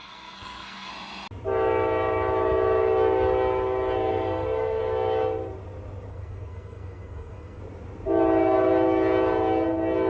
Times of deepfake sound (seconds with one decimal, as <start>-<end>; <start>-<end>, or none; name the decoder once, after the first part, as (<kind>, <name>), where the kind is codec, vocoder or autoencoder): 0.0-0.9 (codec, SNAC); 4.1-4.8; 6.1-7.6